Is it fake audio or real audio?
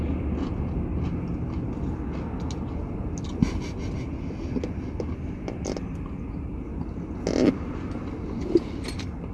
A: real